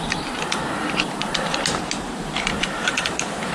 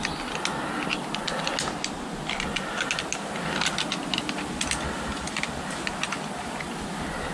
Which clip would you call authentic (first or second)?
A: second